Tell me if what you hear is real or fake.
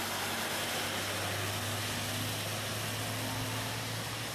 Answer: real